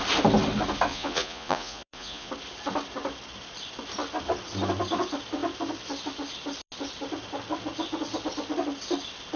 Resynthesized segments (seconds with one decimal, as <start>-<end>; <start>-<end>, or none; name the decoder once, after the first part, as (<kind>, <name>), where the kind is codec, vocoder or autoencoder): 0.9-2.3 (vocoder, Vocos)